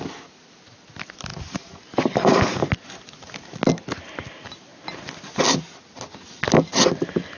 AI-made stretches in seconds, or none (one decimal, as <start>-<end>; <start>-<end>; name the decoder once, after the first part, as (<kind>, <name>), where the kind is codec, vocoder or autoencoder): none